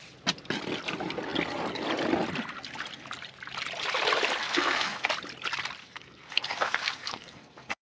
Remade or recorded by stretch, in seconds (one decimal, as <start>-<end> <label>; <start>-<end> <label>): 0.0-4.4 recorded; 4.4-5.1 remade; 5.1-5.8 recorded; 5.8-7.9 remade